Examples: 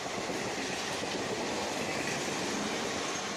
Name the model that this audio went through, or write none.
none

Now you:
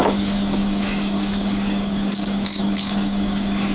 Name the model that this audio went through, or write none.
codec, DAC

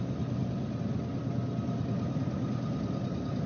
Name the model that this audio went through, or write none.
none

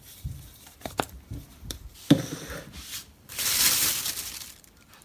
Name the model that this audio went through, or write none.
vocoder, BigVGAN v2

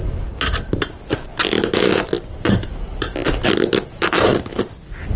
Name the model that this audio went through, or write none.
none